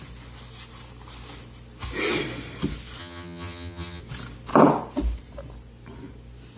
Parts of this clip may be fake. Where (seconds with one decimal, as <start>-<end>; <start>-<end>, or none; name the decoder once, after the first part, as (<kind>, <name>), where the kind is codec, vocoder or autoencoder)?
3.0-4.0 (vocoder, HiFi-GAN)

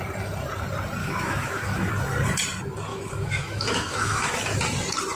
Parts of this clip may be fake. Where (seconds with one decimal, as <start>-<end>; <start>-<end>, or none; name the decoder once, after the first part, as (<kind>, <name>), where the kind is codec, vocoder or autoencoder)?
1.0-1.9 (autoencoder, DAC-VAE); 2.9-4.6